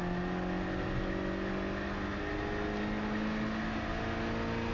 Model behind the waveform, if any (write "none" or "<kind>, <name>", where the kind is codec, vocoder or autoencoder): none